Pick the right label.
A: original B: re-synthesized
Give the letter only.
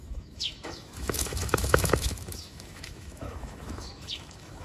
B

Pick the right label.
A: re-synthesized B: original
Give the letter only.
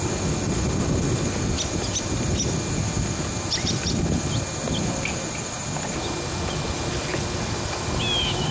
B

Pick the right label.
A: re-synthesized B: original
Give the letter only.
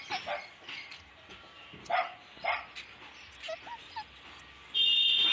B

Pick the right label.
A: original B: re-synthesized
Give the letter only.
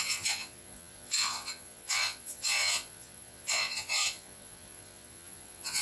B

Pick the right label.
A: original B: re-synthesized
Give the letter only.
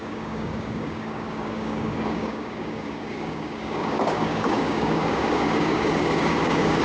B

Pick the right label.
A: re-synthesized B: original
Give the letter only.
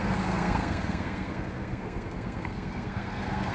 A